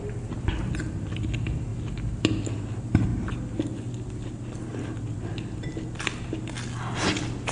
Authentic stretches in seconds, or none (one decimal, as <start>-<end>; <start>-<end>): 0.0-7.5